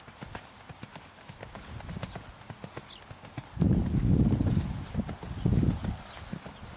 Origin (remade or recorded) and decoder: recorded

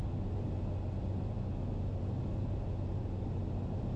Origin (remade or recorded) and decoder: recorded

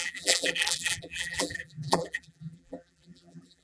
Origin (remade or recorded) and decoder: remade, vocoder, BigVGAN v2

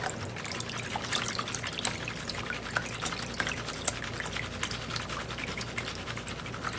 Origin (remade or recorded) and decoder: recorded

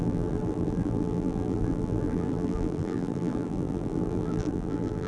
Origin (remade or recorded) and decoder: remade, vocoder, BigVGAN v2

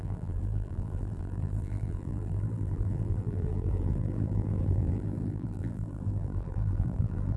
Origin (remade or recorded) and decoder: remade, vocoder, BigVGAN v2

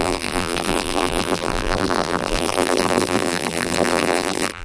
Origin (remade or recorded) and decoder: remade, vocoder, BigVGAN v2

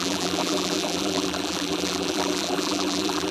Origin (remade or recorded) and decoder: remade, vocoder, BigVGAN v2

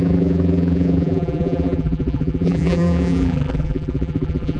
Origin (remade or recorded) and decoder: remade, vocoder, BigVGAN v2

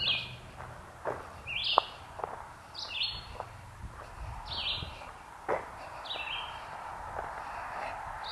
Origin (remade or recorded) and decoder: recorded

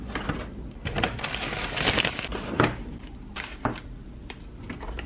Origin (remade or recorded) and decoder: recorded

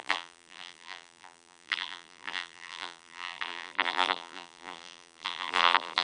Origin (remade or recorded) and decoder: remade, vocoder, BigVGAN v2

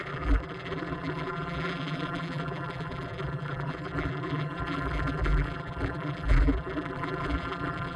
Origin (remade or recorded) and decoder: remade, vocoder, BigVGAN v2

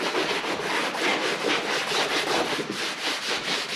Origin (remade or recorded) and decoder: recorded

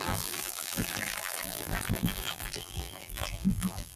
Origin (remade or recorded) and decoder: remade, vocoder, BigVGAN v2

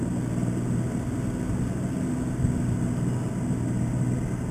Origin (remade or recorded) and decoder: recorded